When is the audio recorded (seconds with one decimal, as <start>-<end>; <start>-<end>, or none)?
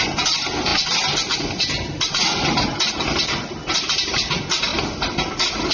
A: 0.0-5.7